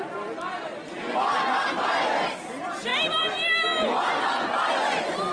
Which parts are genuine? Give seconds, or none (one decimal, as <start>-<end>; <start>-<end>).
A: 0.0-5.3